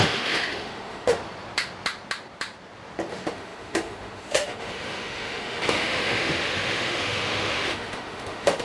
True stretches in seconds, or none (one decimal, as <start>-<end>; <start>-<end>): 1.2-3.1